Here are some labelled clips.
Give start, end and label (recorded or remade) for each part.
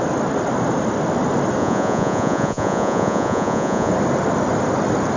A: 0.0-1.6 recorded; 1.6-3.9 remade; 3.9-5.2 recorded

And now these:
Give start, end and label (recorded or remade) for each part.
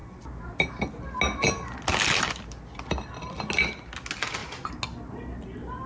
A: 0.0-5.9 recorded